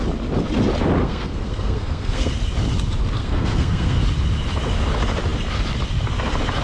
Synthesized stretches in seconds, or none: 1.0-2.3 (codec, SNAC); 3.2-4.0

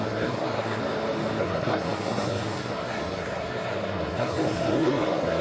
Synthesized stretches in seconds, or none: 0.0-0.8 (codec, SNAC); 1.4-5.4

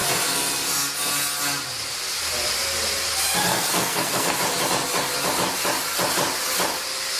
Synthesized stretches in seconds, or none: 3.5-4.4 (codec, SNAC)

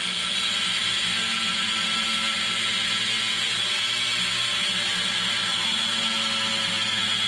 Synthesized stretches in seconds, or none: none

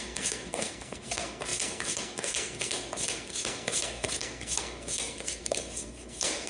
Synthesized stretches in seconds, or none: 0.0-6.5 (codec, SNAC)